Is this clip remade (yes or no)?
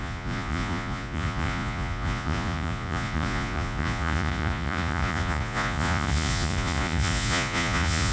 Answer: yes